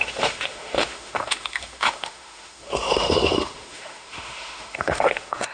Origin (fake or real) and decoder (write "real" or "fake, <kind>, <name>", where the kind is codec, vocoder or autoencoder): fake, autoencoder, DAC-VAE